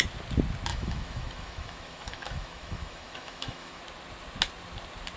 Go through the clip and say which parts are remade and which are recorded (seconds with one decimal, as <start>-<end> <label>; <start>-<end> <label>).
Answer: 0.0-0.7 recorded; 0.7-3.8 remade; 3.8-5.2 recorded